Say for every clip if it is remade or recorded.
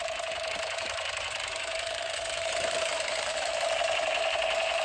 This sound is remade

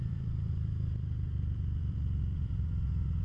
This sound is remade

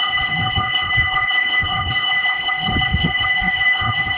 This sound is remade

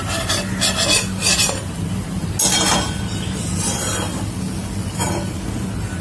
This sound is recorded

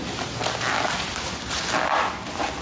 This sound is recorded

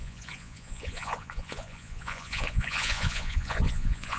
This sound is remade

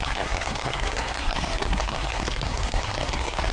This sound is remade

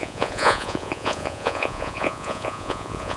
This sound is remade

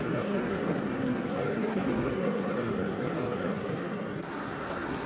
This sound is remade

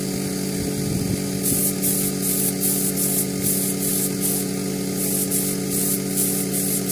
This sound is recorded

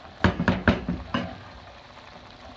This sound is recorded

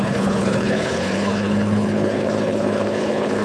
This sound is remade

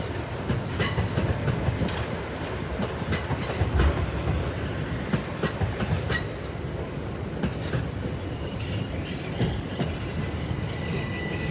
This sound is recorded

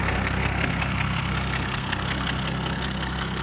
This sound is remade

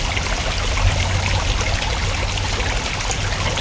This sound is recorded